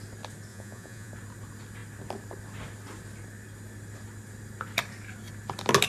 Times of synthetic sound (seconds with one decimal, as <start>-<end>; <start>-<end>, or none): 0.5-1.1